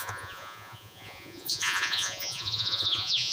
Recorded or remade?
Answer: remade